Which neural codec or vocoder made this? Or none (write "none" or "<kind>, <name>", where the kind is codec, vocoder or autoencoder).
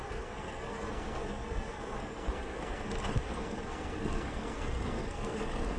codec, SNAC